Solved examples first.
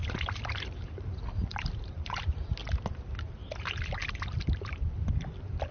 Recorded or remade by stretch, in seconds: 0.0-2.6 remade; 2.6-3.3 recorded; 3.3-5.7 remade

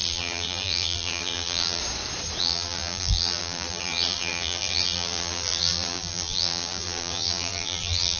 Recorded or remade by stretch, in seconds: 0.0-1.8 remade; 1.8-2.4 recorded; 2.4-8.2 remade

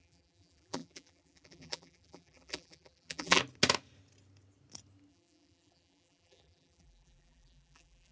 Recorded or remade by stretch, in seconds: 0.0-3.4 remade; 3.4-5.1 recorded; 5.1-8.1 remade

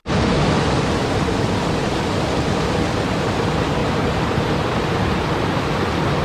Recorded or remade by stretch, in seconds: 0.0-3.8 recorded; 3.8-5.0 remade; 5.0-6.2 recorded

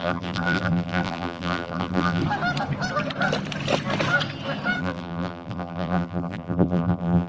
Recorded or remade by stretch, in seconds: 0.0-2.2 remade; 2.2-4.8 recorded; 4.8-7.3 remade